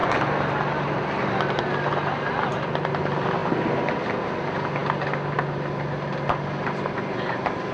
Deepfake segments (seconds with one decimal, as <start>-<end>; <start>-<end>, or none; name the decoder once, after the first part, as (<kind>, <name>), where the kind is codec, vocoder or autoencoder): none